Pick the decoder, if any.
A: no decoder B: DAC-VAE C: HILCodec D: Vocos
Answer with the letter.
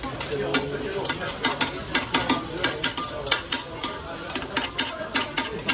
A